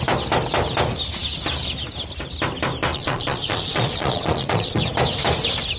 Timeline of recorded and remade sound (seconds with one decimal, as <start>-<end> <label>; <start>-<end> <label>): 0.0-2.9 recorded; 2.9-4.8 remade; 4.8-5.8 recorded